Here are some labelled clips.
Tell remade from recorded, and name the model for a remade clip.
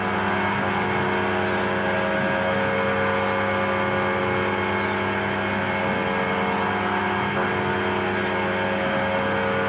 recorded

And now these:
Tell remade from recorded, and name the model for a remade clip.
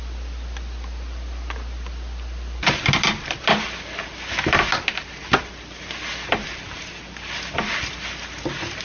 recorded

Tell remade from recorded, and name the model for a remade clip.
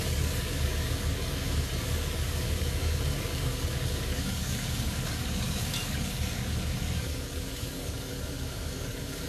remade, codec, DAC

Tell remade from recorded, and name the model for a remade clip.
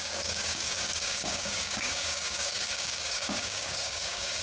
remade, codec, DAC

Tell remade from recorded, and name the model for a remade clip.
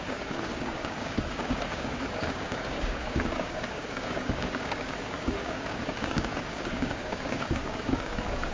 remade, codec, DAC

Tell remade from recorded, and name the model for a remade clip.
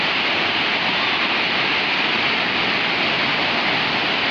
recorded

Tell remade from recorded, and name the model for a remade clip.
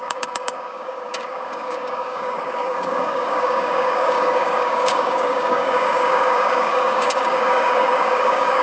remade, codec, DAC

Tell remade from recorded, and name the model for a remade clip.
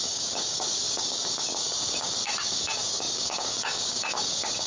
remade, codec, DAC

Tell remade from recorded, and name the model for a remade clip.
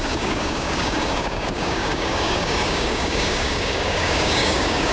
remade, codec, DAC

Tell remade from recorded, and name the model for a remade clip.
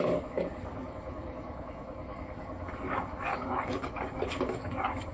remade, codec, DAC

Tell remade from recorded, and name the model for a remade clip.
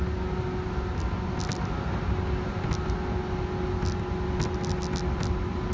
recorded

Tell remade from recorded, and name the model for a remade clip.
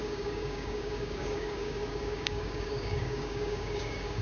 remade, codec, DAC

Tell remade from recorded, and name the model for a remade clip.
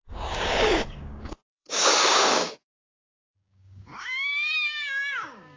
remade, codec, DAC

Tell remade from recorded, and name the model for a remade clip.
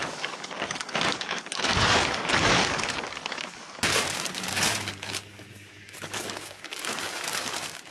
remade, codec, DAC